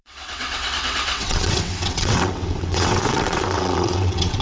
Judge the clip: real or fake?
fake